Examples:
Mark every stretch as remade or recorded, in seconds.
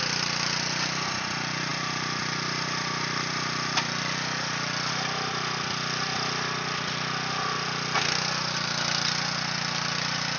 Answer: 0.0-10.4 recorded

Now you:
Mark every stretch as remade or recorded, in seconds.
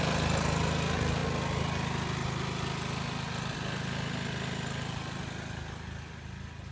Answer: 0.0-6.7 recorded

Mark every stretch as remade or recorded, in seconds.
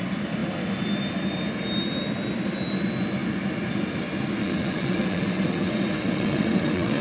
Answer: 0.0-4.4 recorded; 4.4-7.0 remade